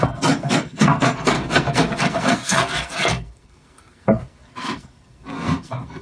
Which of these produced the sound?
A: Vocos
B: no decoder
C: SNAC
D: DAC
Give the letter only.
C